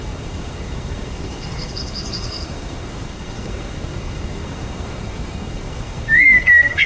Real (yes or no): no